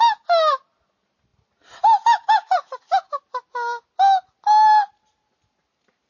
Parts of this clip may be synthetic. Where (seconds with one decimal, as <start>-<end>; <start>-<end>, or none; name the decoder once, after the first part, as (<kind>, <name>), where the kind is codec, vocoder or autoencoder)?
none